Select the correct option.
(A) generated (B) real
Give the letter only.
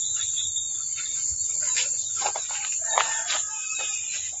B